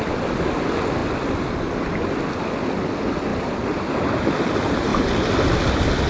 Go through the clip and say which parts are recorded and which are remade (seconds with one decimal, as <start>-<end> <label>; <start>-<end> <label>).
0.0-6.1 recorded

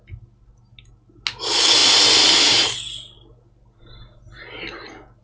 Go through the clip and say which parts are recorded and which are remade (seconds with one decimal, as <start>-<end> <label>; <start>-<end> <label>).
0.0-5.2 recorded